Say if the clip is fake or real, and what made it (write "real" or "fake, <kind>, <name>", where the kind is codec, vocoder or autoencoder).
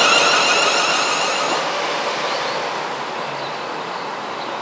real